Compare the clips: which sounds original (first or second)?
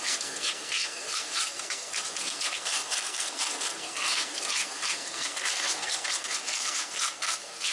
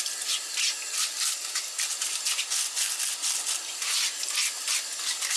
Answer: second